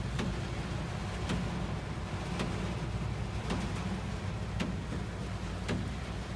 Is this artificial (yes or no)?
no